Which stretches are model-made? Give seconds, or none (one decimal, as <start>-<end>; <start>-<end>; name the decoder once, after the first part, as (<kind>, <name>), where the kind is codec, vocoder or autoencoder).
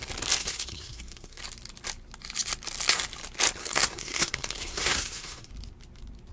0.4-1.4 (codec, SNAC); 3.6-5.5